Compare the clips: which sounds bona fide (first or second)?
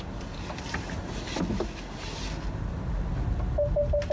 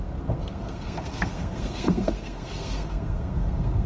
first